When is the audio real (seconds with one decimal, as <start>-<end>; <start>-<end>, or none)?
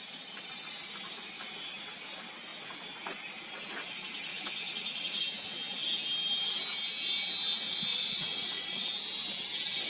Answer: 0.0-4.3; 5.2-7.9; 8.9-9.9